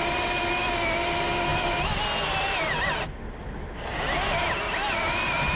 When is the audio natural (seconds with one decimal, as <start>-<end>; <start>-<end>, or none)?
0.0-5.6